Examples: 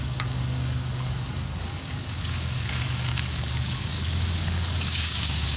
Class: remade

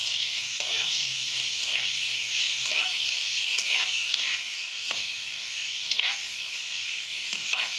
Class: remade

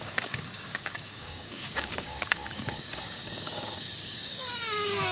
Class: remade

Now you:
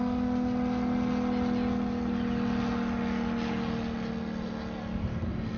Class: recorded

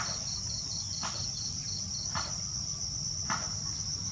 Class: recorded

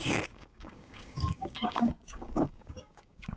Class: remade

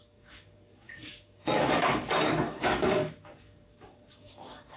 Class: remade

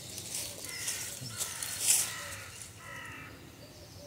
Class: recorded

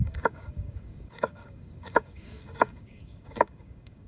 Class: remade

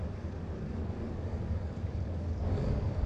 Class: remade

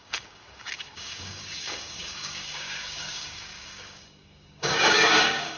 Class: remade